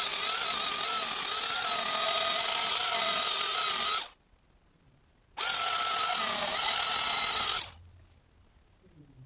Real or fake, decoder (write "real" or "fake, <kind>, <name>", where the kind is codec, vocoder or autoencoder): real